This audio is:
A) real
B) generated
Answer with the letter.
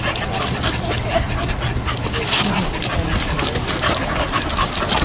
A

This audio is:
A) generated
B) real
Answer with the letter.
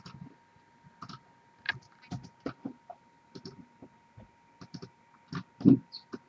B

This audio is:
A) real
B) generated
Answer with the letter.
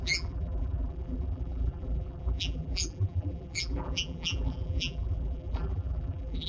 B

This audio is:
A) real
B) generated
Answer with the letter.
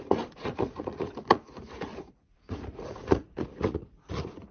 B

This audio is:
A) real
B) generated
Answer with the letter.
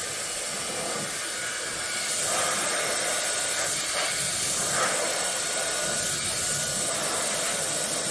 A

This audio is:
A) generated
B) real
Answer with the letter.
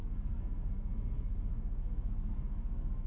A